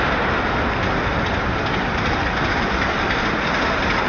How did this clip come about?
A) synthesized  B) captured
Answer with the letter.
B